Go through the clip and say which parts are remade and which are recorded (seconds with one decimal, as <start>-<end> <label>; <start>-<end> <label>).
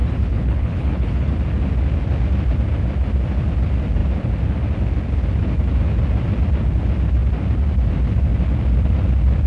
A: 0.0-1.3 remade; 1.3-9.5 recorded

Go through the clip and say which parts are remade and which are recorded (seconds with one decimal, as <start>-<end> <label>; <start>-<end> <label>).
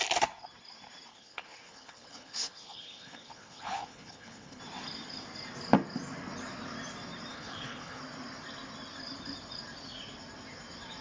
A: 0.0-1.1 recorded; 1.1-4.6 remade; 4.6-7.3 recorded; 7.3-8.0 remade; 8.0-11.0 recorded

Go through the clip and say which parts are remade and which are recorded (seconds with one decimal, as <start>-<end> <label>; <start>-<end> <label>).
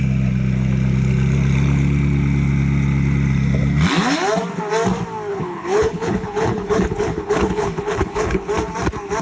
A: 0.0-5.3 recorded; 5.3-8.5 remade; 8.5-9.2 recorded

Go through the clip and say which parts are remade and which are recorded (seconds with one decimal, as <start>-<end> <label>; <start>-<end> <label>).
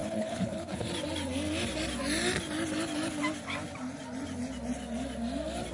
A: 0.0-0.9 remade; 0.9-5.7 recorded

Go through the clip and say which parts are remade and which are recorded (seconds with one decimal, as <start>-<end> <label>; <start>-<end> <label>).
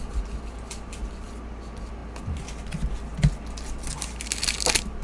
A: 0.0-5.0 recorded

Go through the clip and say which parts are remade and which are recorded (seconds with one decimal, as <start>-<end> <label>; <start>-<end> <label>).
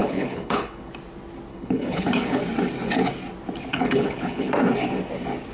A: 0.0-0.9 remade; 0.9-1.5 recorded; 1.5-2.4 remade; 2.4-3.7 recorded; 3.7-4.5 remade; 4.5-5.5 recorded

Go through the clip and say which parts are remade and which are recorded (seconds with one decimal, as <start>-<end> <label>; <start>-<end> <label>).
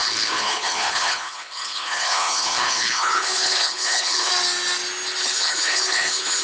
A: 0.0-4.3 remade; 4.3-5.2 recorded; 5.2-6.4 remade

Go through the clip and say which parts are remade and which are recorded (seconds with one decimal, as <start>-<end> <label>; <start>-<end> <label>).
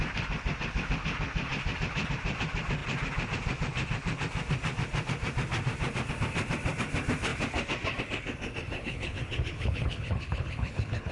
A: 0.0-8.8 recorded; 8.8-11.1 remade